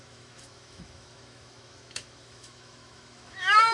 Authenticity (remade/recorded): remade